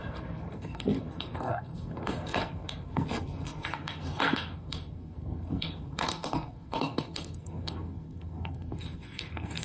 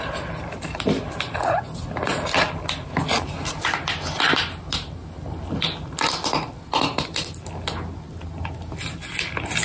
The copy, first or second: first